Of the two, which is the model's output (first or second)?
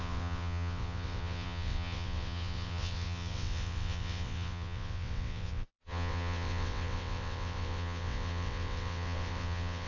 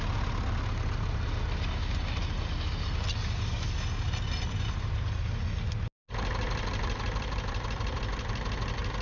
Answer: first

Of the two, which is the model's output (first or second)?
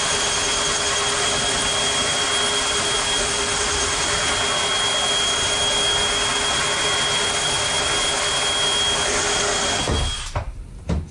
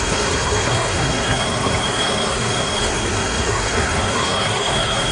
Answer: second